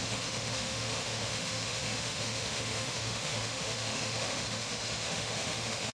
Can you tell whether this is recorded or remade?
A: remade